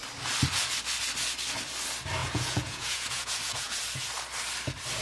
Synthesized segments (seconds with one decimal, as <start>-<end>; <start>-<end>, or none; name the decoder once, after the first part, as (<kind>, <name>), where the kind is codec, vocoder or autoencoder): 2.2-3.8 (vocoder, Vocos)